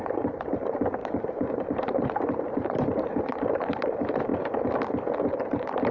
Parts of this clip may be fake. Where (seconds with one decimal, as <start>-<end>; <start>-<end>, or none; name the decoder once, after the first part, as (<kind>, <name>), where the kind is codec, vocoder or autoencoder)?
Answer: 0.0-4.3 (vocoder, BigVGAN v2); 5.3-5.9